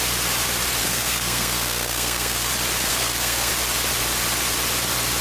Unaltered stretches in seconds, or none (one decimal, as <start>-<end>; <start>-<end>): 0.0-0.8; 2.5-2.9; 3.5-5.2